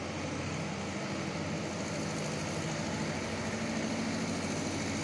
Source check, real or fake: real